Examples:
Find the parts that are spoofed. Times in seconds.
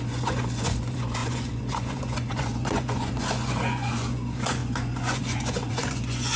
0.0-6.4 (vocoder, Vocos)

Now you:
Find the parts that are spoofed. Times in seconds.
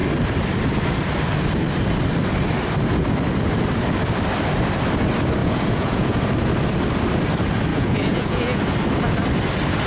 5.4-6.2 (vocoder, Vocos); 7.7-8.6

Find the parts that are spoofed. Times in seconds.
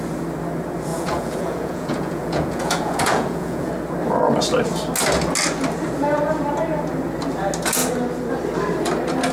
0.9-3.7 (vocoder, Vocos)